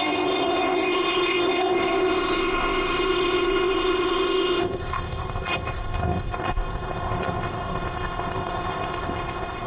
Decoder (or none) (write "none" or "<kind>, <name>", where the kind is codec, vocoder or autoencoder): codec, ZipCodec